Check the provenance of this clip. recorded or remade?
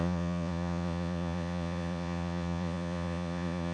remade